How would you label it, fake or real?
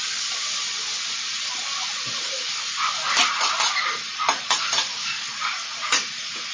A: real